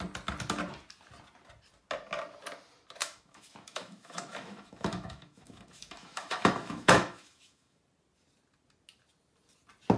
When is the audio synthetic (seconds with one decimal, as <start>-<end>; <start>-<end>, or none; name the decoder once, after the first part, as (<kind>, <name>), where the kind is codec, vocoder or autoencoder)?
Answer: 3.0-7.8 (autoencoder, DAC-VAE)